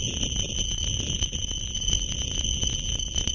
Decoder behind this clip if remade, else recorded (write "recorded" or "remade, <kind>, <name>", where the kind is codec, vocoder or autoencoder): recorded